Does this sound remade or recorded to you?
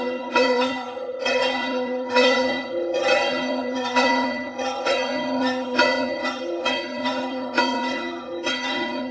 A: remade